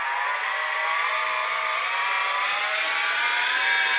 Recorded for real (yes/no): yes